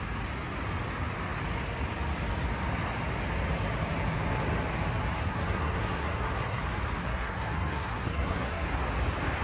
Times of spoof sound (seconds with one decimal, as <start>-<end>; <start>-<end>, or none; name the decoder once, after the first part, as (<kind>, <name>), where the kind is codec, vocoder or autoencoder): 5.3-6.6 (codec, SNAC); 7.0-8.7